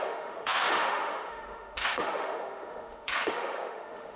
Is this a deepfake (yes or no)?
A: yes